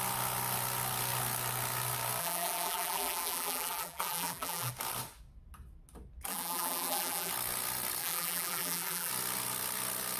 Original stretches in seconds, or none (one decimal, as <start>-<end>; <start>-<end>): 0.0-2.2; 4.7-6.3; 7.3-8.0; 9.1-10.2